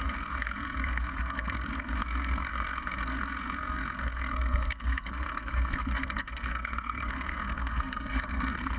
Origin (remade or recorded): remade